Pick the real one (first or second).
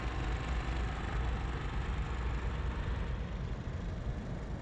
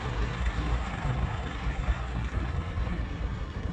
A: first